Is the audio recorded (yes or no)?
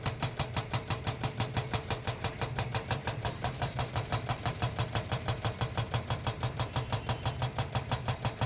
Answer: no